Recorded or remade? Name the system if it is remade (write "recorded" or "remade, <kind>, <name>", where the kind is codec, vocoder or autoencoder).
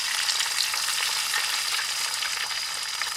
recorded